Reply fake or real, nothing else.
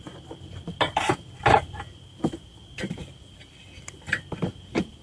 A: fake